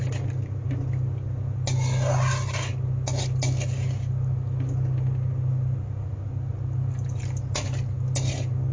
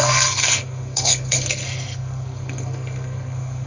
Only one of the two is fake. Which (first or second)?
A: second